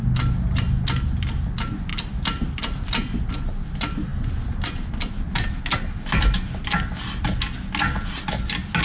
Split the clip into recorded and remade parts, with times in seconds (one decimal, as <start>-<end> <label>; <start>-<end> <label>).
0.0-8.8 recorded